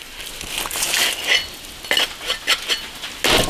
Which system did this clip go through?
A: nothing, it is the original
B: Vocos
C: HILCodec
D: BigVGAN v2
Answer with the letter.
A